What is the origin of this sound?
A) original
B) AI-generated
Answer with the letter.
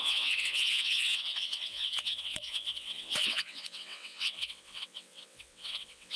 B